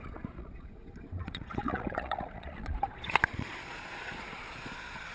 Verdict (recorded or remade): remade